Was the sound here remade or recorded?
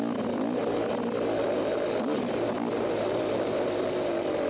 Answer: recorded